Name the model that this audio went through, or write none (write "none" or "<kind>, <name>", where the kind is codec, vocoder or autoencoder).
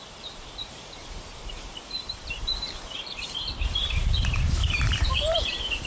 vocoder, BigVGAN v2